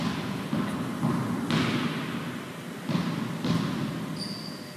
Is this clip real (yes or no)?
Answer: yes